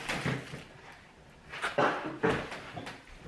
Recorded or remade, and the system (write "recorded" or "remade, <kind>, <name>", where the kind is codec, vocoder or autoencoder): recorded